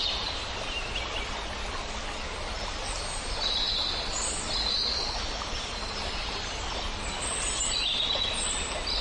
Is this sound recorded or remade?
recorded